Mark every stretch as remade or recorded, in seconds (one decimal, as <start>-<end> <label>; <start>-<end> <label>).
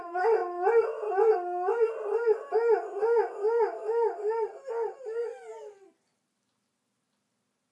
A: 0.0-7.7 recorded